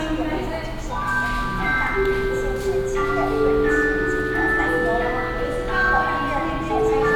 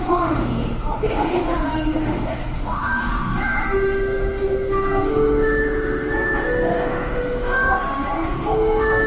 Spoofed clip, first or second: second